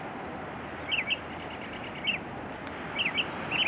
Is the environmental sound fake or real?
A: real